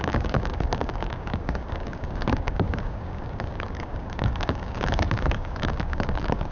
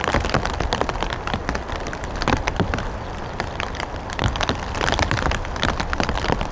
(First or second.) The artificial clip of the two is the first